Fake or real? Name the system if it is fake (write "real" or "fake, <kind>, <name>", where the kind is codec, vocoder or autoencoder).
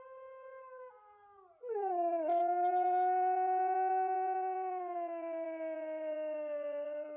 real